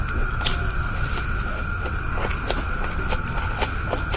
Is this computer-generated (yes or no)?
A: no